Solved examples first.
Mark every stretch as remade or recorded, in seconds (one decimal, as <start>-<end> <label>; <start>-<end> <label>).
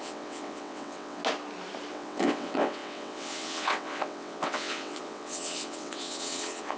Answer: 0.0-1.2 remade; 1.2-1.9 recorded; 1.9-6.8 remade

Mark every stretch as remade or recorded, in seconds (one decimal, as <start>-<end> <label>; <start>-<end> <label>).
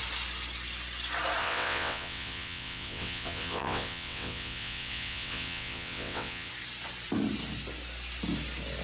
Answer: 0.0-1.4 recorded; 1.4-6.5 remade; 6.5-8.8 recorded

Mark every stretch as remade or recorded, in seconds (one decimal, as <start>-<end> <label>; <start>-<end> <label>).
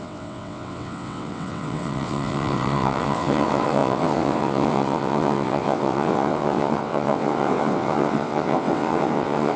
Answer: 0.0-9.6 remade